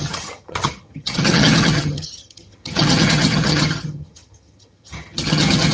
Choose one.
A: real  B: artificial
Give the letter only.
B